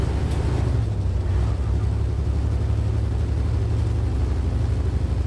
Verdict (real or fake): real